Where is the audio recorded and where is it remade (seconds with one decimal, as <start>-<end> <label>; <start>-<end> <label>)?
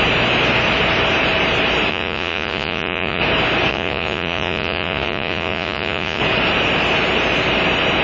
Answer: 0.0-1.9 recorded; 1.9-3.2 remade; 3.2-3.7 recorded; 3.7-6.2 remade; 6.2-8.0 recorded